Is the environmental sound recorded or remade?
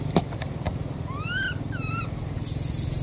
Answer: recorded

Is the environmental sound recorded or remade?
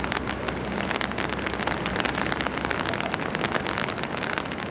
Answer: recorded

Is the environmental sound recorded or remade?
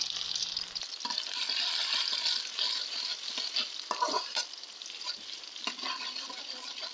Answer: recorded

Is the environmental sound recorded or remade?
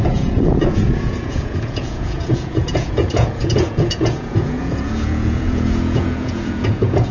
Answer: remade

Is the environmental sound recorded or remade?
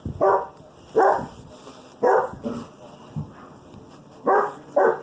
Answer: recorded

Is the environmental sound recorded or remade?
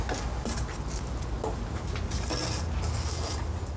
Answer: recorded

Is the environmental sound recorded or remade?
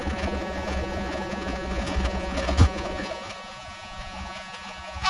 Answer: remade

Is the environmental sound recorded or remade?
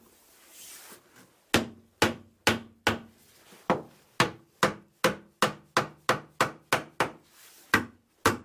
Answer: recorded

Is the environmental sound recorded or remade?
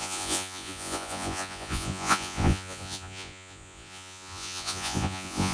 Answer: remade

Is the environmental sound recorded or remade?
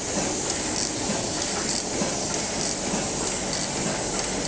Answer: recorded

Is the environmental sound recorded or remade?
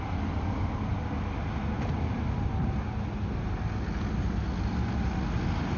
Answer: recorded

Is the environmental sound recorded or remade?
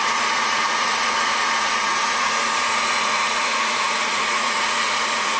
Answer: remade